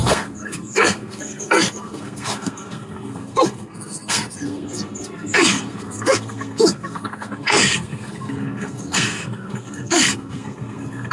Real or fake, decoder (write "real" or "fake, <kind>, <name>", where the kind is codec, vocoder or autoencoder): fake, codec, SNAC